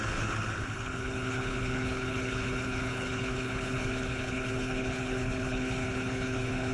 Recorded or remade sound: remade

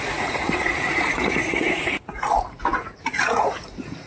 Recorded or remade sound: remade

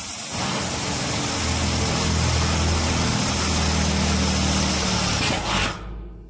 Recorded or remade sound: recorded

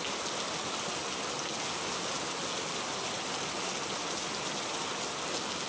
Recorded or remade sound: recorded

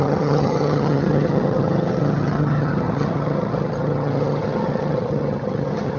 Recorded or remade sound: remade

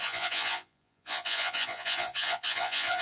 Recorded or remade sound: remade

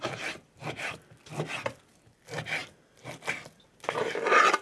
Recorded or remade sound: recorded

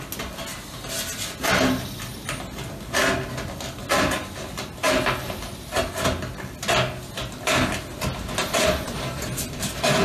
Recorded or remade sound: recorded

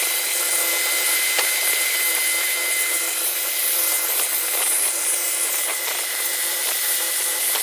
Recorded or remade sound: remade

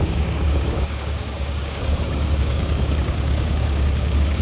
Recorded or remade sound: remade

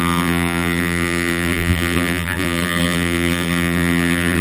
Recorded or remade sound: remade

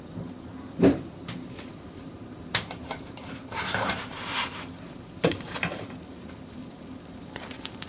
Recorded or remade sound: remade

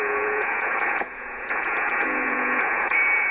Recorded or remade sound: remade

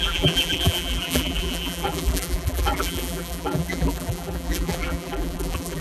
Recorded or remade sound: remade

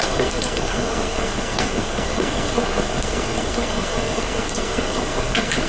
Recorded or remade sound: remade